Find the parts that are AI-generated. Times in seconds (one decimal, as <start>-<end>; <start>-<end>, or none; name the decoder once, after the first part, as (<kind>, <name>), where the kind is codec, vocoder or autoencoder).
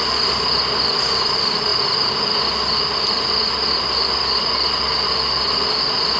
none